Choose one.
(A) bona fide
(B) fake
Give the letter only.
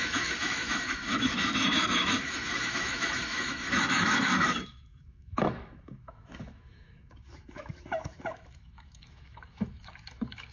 B